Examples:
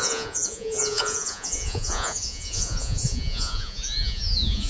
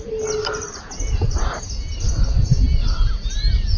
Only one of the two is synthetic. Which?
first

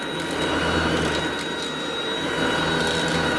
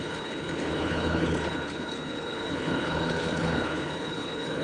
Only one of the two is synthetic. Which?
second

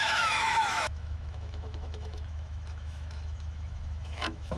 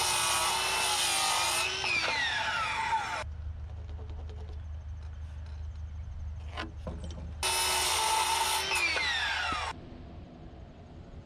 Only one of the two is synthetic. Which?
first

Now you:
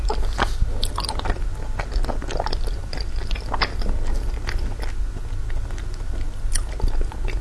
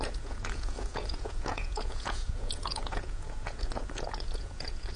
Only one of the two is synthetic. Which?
second